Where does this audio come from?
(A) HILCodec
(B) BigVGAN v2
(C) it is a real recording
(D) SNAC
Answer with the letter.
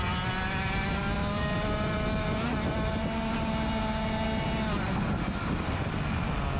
C